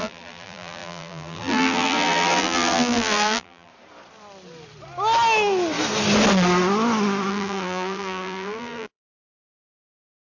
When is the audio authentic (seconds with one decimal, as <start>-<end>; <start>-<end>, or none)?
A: 3.7-7.3